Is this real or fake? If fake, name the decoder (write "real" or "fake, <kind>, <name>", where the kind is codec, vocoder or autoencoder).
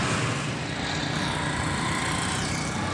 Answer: real